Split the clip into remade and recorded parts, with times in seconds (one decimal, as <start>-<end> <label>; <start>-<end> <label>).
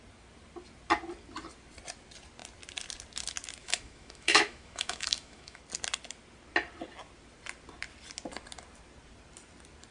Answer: 0.0-3.6 recorded; 3.6-5.6 remade; 5.6-9.9 recorded